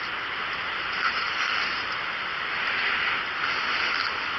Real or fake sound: real